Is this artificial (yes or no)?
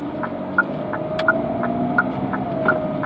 no